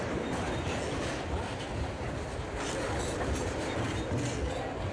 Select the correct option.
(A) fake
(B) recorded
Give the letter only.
B